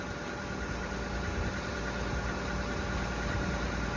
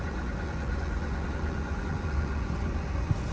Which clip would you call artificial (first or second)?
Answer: second